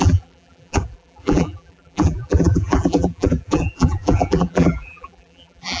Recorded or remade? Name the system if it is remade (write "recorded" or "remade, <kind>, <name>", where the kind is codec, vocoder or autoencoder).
remade, vocoder, BigVGAN v2